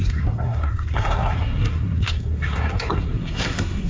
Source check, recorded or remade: remade